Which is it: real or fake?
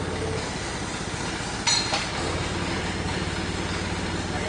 real